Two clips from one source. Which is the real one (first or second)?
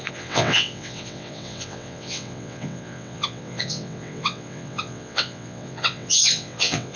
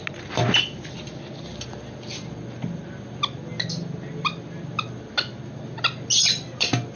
second